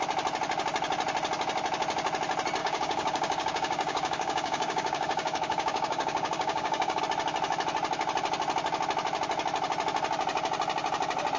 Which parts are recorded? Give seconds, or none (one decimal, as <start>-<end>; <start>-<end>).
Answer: 0.0-2.6; 7.0-11.4